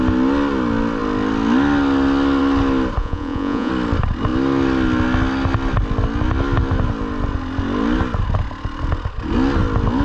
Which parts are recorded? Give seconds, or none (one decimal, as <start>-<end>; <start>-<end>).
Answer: 0.0-3.0; 3.7-10.0